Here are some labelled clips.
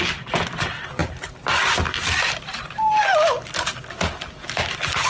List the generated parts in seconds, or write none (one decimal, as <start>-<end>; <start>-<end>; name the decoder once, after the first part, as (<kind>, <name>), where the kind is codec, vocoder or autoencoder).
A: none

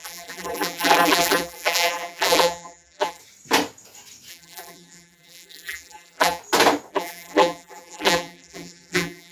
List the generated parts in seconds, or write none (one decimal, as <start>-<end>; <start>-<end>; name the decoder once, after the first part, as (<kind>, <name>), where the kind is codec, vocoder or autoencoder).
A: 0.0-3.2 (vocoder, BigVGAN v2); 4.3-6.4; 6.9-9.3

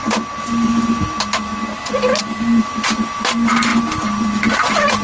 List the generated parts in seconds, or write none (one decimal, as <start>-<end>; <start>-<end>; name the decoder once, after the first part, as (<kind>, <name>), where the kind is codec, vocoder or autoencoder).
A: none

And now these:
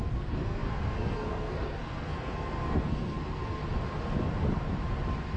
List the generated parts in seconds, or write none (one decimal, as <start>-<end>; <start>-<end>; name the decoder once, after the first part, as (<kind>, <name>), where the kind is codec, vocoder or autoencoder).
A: 0.0-3.6 (codec, SNAC)